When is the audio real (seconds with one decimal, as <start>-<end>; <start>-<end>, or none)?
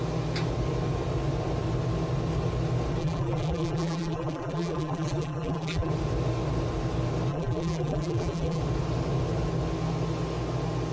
0.0-3.0; 5.9-7.3; 8.6-10.9